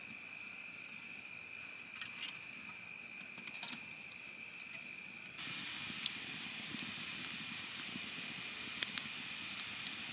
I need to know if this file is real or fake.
real